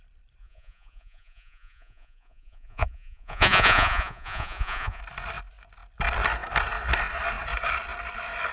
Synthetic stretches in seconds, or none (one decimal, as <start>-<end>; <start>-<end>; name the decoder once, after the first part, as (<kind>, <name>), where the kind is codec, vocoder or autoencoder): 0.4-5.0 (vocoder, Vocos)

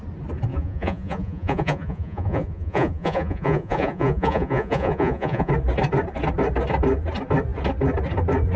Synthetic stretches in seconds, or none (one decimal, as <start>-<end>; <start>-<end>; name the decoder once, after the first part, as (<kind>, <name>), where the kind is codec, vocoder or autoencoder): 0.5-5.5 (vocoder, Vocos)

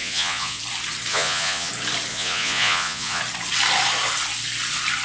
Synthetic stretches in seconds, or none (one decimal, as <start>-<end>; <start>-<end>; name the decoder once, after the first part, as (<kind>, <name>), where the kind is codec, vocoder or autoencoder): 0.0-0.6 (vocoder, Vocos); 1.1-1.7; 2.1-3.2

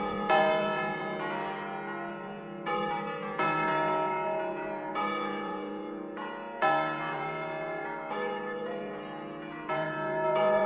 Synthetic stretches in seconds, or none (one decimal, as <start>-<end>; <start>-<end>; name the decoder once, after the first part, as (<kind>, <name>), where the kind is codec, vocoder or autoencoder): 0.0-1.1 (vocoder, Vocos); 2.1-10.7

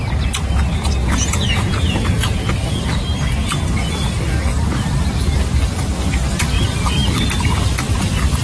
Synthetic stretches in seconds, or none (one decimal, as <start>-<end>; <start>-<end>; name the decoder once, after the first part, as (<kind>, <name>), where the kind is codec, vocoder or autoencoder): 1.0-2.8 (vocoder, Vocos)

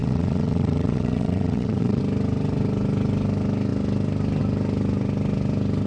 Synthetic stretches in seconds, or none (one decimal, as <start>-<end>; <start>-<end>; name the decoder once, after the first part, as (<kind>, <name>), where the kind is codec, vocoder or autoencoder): 0.0-2.0 (vocoder, Vocos)

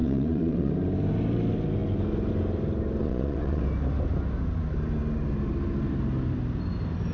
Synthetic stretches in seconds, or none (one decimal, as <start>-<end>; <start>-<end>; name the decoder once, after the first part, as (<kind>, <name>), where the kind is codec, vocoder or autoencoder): 0.0-0.7 (vocoder, Vocos); 3.0-3.6

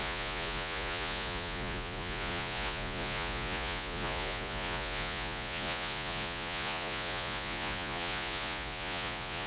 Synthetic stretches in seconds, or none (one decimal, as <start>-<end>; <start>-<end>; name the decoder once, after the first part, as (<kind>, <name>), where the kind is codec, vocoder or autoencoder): 0.0-9.5 (vocoder, Vocos)